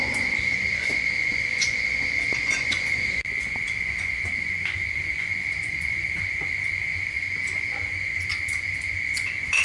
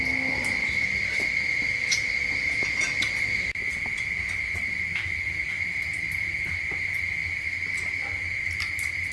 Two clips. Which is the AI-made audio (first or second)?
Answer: first